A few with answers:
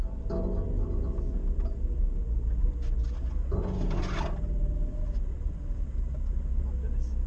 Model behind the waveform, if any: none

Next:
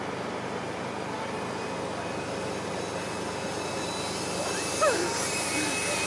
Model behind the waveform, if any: none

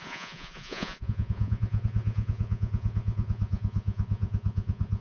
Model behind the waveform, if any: vocoder, Vocos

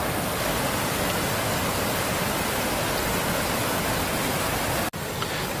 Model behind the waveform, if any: none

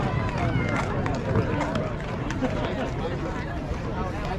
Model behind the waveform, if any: none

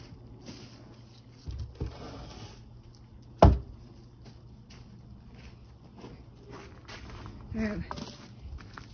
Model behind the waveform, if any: none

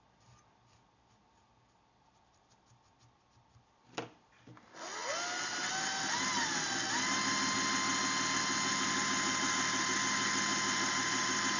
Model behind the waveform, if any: none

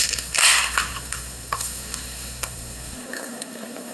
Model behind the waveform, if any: codec, SNAC